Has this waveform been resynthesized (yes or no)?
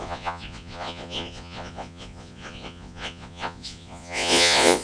yes